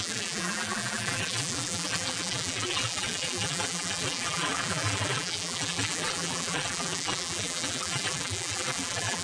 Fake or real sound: fake